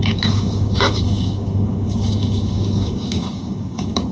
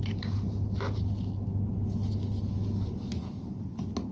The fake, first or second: first